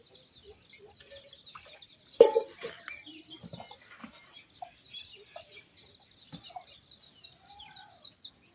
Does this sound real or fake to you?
real